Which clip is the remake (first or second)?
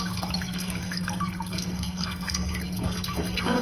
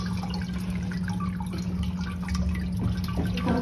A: first